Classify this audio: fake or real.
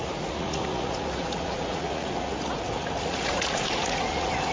fake